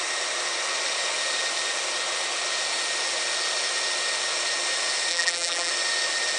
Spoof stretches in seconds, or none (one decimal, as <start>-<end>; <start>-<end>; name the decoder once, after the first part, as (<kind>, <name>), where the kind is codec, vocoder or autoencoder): 5.1-5.7 (vocoder, BigVGAN v2)